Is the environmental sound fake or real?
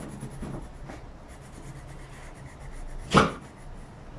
real